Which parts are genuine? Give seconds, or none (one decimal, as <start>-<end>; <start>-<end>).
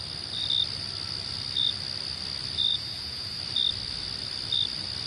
0.0-2.7; 3.4-5.1